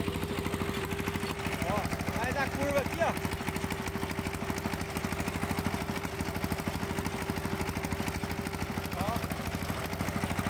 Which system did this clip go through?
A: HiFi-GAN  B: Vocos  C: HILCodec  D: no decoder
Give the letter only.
D